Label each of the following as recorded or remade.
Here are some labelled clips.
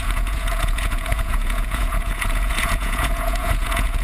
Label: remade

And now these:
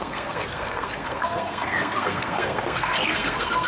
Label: remade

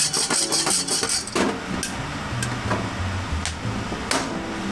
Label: recorded